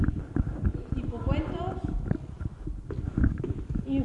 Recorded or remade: recorded